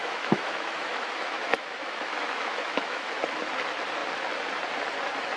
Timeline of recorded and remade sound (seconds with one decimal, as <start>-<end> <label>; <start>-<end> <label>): 0.0-3.2 remade; 3.2-5.4 recorded